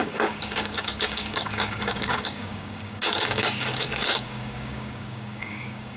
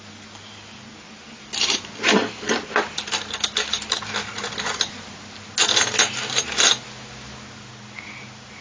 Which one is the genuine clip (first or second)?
second